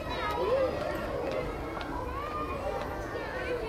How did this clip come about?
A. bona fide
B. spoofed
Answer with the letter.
A